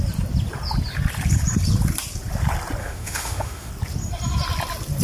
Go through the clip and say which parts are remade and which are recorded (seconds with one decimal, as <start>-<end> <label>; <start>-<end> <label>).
0.0-2.8 recorded; 2.8-3.7 remade; 3.7-5.0 recorded